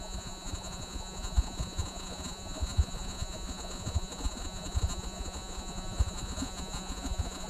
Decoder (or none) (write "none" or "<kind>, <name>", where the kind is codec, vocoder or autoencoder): vocoder, Vocos